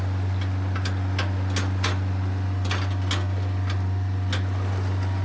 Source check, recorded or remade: recorded